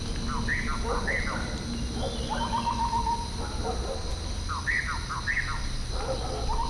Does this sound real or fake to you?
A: real